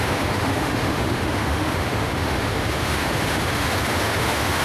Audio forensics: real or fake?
fake